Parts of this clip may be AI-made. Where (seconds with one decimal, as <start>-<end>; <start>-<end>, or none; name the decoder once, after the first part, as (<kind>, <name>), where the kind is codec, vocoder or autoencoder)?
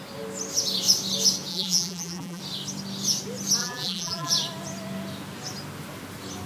1.5-2.4 (vocoder, BigVGAN v2); 3.6-4.3